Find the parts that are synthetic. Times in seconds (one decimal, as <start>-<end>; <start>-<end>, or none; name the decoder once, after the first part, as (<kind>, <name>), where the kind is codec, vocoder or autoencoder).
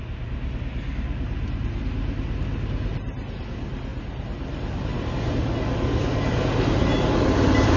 none